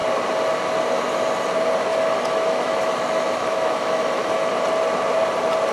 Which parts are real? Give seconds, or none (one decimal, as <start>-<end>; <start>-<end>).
0.0-1.9; 4.5-5.7

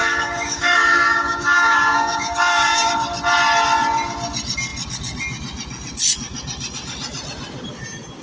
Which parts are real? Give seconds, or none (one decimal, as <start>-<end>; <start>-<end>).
2.9-8.2

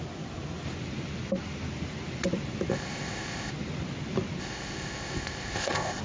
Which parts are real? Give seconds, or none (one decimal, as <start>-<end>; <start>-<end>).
0.0-2.7; 3.5-4.4

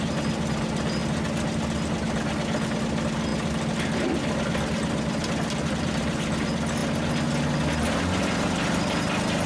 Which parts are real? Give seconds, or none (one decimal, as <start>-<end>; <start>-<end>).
0.0-9.5

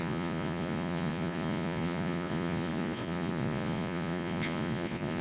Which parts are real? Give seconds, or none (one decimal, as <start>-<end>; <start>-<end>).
none

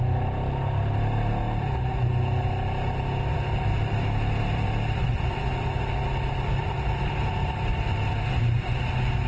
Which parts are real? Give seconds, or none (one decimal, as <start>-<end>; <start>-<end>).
0.0-3.3; 5.8-6.6; 8.8-9.3

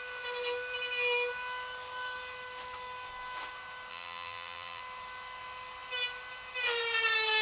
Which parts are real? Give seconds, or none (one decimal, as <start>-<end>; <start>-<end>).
0.0-3.9; 4.8-7.4

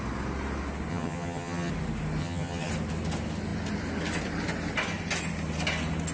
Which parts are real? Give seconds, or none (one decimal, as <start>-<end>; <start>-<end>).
0.0-0.9; 1.7-2.2; 2.7-6.1